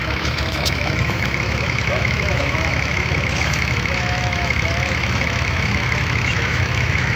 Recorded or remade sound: remade